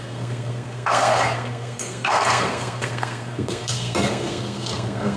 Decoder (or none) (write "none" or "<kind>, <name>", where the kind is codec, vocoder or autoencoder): codec, SNAC